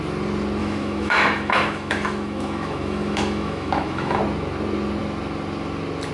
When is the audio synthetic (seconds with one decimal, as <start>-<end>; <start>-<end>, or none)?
0.6-4.2